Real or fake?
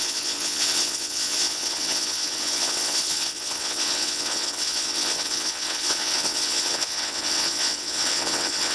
fake